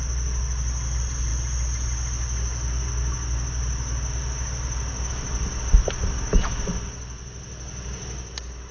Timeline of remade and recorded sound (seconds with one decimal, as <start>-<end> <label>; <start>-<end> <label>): 0.0-8.7 recorded